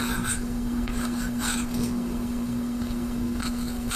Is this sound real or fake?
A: fake